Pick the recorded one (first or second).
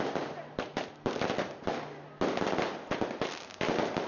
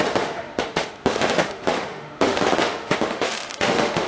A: first